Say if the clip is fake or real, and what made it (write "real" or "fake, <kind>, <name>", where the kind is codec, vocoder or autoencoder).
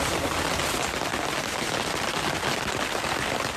real